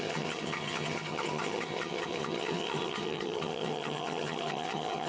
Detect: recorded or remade remade